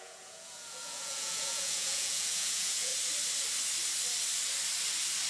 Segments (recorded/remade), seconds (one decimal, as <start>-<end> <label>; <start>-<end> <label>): 0.0-2.9 remade; 2.9-5.3 recorded